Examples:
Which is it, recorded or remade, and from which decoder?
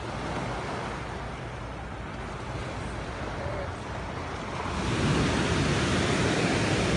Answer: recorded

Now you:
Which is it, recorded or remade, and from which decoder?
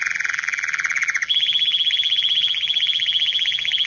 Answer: remade, vocoder, BigVGAN v2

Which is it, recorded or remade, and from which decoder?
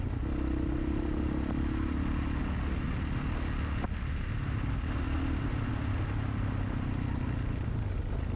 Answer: recorded